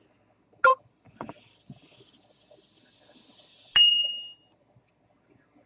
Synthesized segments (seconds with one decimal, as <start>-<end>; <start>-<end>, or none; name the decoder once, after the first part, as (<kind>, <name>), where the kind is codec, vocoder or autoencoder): none